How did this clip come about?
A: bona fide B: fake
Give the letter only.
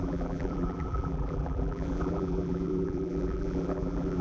B